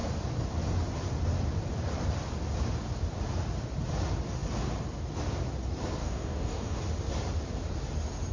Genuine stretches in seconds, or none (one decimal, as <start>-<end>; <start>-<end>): 0.0-6.0; 6.8-8.3